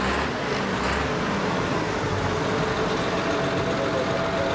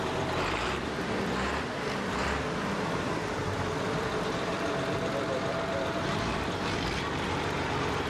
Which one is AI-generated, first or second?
second